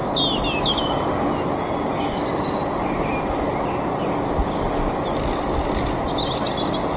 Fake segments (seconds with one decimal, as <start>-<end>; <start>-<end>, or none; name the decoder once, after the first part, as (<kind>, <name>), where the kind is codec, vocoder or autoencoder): none